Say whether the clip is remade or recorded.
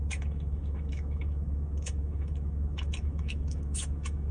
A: remade